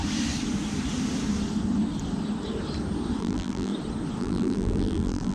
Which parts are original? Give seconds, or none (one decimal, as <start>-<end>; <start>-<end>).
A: 0.0-3.2; 3.7-4.2